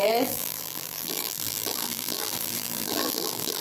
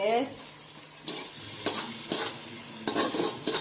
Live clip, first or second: second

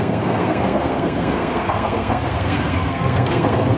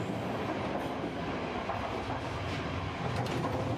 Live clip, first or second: second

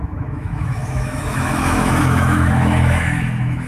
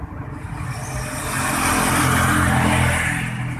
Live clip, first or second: second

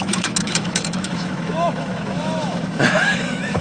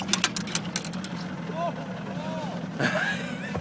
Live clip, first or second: second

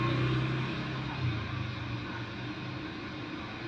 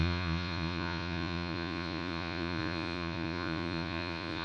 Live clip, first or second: first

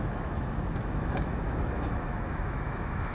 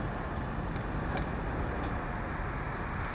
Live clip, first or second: second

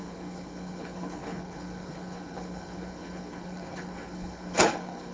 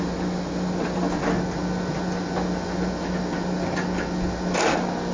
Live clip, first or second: second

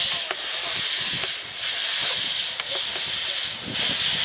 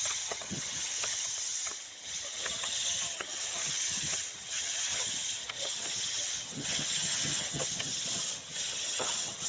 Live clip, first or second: first